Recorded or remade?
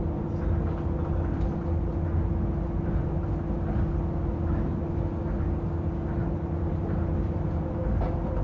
recorded